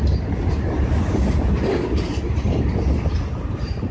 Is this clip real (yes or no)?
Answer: yes